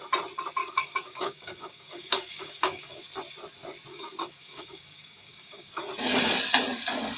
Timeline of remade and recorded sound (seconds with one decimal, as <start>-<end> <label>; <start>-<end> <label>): 0.0-0.6 recorded; 0.6-3.0 remade; 3.0-3.9 recorded; 3.9-5.7 remade; 5.7-7.2 recorded